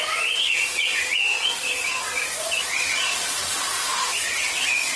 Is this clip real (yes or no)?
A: no